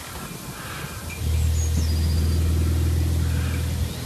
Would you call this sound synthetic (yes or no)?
no